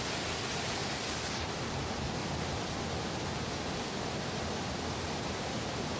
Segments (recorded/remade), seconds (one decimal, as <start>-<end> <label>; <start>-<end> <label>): 0.0-0.8 recorded; 0.8-1.7 remade; 1.7-2.2 recorded; 2.2-6.0 remade